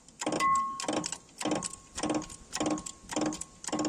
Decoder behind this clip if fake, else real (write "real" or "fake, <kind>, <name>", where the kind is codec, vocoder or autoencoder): real